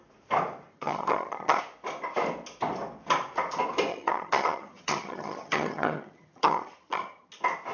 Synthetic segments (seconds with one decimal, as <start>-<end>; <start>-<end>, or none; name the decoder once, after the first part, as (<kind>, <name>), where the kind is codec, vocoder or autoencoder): 0.7-1.6 (vocoder, HiFi-GAN); 3.9-7.3